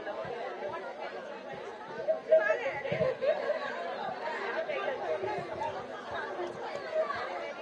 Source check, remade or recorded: recorded